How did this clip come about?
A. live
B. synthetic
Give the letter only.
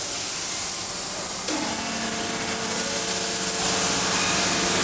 A